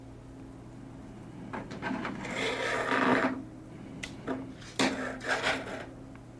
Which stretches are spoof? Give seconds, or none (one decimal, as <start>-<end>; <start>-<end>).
none